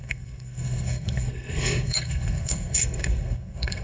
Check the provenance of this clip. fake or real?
fake